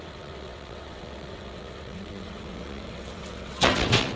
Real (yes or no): no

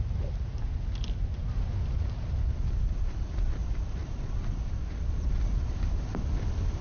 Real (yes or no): yes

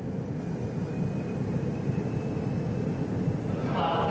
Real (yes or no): yes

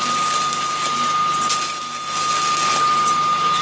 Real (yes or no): yes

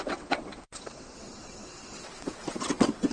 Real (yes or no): no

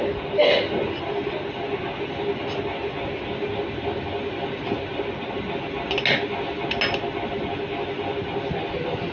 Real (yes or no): yes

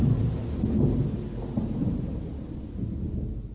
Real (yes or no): yes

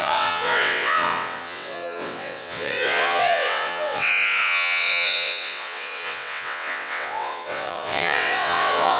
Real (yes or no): no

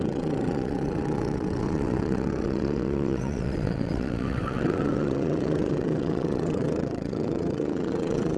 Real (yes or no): no